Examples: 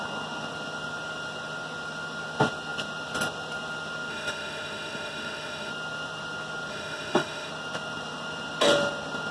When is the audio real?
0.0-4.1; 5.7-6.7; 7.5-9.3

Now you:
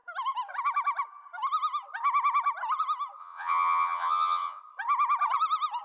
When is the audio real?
0.0-3.2; 4.6-5.8